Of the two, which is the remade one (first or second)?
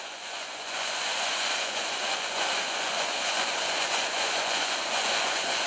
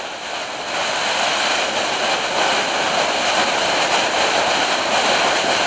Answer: first